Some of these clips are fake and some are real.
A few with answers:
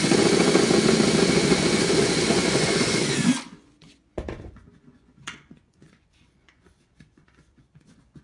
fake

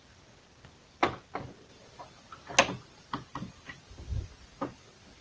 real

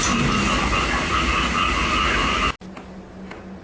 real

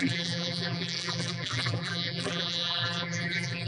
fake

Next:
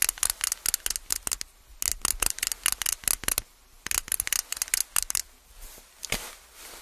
real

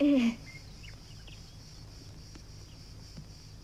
real